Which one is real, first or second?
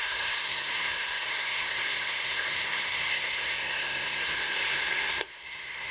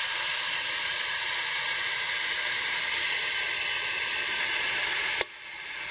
second